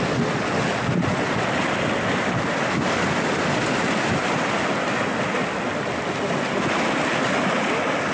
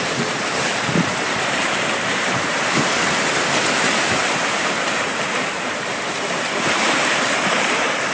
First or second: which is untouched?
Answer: first